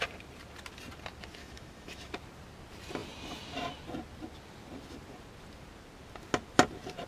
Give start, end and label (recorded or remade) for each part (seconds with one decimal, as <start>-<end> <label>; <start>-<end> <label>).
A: 0.0-1.4 recorded; 1.4-2.1 remade; 2.1-7.1 recorded